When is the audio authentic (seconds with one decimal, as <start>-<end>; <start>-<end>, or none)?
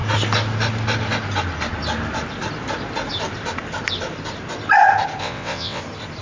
0.0-5.2; 5.8-6.2